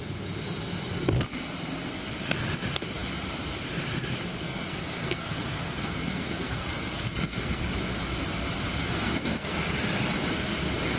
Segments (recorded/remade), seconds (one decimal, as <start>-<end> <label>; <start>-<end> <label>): 0.0-4.3 recorded; 4.3-7.7 remade; 7.7-8.8 recorded; 8.8-9.7 remade; 9.7-11.0 recorded